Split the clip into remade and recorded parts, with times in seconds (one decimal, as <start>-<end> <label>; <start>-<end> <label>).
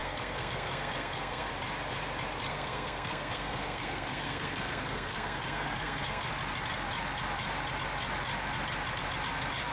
0.0-1.5 remade; 1.5-2.5 recorded; 2.5-6.3 remade; 6.3-9.7 recorded